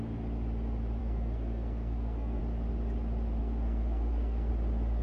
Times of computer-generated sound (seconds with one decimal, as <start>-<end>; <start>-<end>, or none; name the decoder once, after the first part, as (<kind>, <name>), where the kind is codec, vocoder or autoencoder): 1.0-2.4 (codec, SNAC); 3.4-4.5